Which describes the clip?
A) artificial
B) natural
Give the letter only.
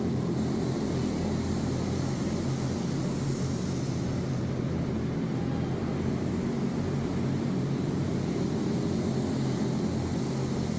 B